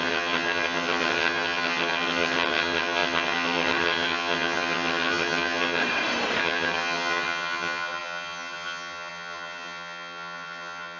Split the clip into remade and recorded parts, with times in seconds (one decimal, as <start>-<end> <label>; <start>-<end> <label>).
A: 0.0-5.8 remade; 5.8-6.4 recorded; 6.4-11.0 remade